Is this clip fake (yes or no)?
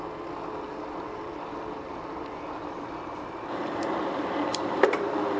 yes